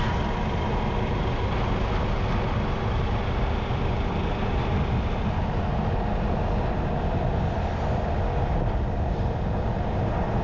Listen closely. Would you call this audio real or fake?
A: real